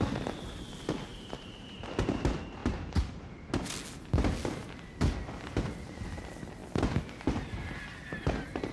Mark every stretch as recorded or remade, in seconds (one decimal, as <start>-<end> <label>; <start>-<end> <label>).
0.0-1.1 recorded; 1.1-1.8 remade; 1.8-8.7 recorded